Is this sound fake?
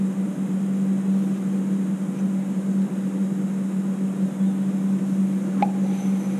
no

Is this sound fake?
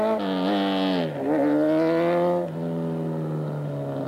no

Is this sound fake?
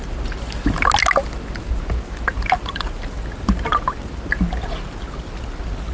no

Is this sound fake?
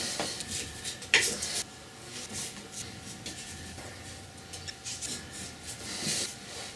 no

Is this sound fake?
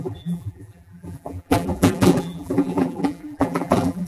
yes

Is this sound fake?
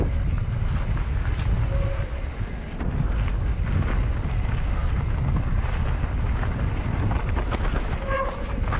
no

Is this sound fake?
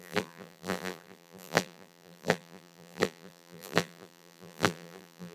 yes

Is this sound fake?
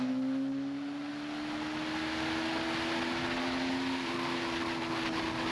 no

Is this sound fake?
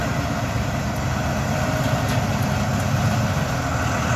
no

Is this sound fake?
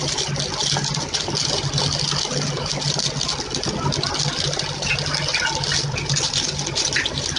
no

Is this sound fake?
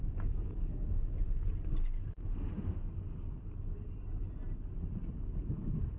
no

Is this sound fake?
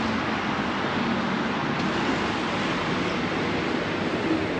no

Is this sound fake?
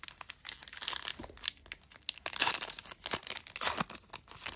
no